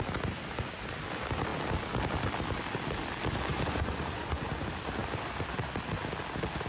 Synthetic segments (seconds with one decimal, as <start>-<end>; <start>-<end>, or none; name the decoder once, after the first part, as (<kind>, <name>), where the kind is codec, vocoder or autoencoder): 3.5-4.5 (vocoder, Vocos)